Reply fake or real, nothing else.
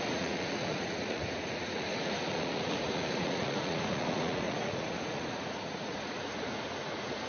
fake